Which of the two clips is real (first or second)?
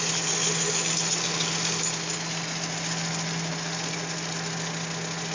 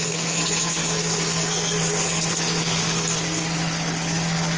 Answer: first